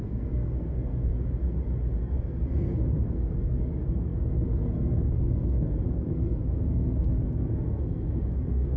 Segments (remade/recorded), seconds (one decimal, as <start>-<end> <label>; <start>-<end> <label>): 0.0-1.1 remade; 1.1-2.0 recorded; 2.0-8.8 remade